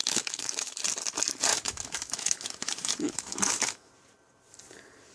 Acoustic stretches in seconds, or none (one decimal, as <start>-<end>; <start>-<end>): 0.8-1.5; 3.9-5.1